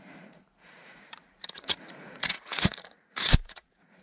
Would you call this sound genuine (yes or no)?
no